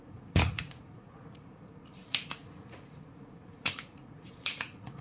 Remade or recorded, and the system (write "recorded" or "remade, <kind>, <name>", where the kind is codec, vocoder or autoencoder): remade, vocoder, Vocos